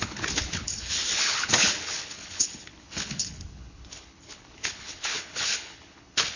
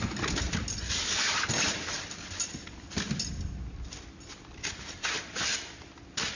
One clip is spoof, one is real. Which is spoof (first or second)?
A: first